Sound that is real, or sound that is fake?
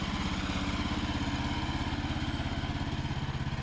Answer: real